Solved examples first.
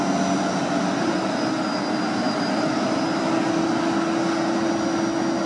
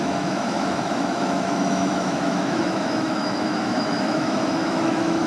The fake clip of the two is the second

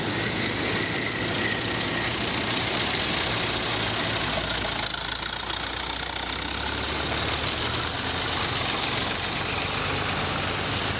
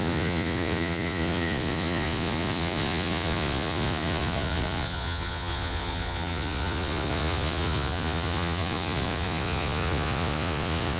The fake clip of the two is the second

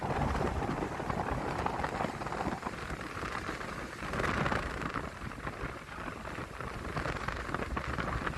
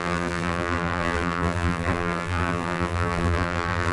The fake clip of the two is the second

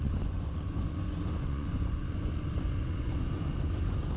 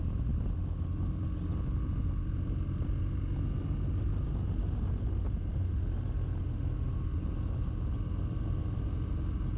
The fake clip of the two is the first